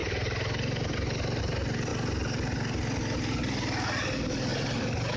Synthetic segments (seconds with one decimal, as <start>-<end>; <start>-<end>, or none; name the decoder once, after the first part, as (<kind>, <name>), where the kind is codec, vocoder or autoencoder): 0.0-1.9 (vocoder, BigVGAN v2)